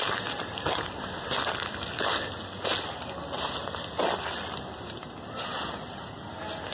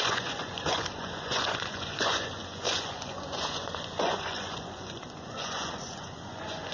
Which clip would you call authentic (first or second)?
first